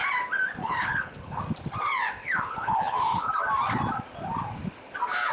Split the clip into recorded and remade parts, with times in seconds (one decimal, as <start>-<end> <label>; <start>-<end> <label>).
0.0-0.6 recorded; 0.6-1.4 remade; 1.4-2.2 recorded; 2.2-3.3 remade; 3.3-5.3 recorded